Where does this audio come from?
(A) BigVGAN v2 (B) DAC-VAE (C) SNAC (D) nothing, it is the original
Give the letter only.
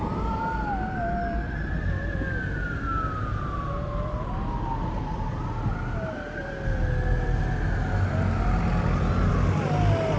D